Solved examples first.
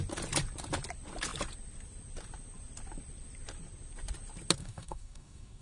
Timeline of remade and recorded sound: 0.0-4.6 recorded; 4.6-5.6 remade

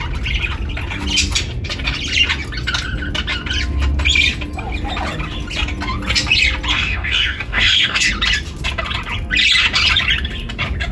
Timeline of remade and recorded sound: 0.0-6.7 recorded; 6.7-8.1 remade; 8.1-10.9 recorded

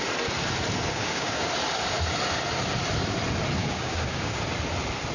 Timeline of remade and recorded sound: 0.0-0.9 recorded; 0.9-1.5 remade; 1.5-3.6 recorded; 3.6-4.4 remade; 4.4-5.1 recorded

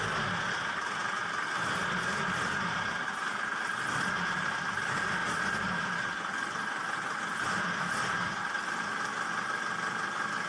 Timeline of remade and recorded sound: 0.0-10.5 recorded

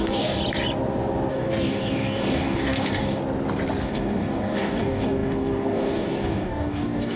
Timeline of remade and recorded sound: 0.0-0.4 remade; 0.4-1.3 recorded; 1.3-3.2 remade; 3.2-3.8 recorded; 3.8-7.2 remade